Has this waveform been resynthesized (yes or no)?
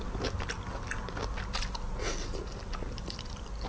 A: no